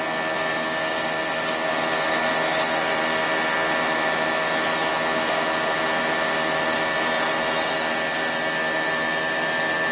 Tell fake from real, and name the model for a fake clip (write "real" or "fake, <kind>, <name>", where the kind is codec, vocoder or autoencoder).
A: real